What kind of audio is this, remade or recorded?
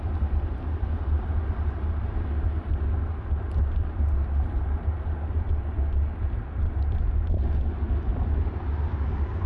recorded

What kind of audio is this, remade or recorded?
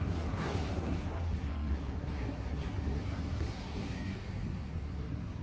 remade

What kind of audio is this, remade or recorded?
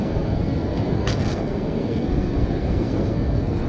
remade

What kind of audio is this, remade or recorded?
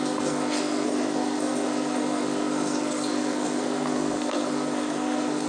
remade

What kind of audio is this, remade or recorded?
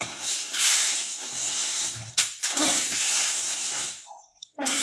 remade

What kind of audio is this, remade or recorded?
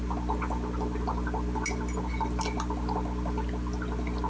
recorded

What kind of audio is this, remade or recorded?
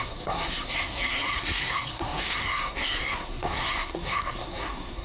remade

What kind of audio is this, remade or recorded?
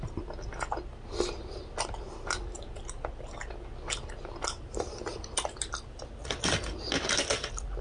recorded